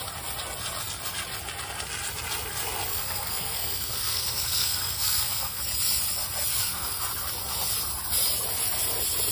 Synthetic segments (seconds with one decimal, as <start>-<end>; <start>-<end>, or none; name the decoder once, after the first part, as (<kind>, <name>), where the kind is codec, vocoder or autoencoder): 2.9-5.6 (codec, SNAC); 6.5-7.0